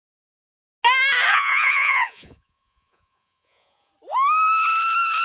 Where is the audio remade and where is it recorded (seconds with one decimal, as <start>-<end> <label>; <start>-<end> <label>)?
0.0-1.3 recorded; 1.3-3.9 remade; 3.9-5.2 recorded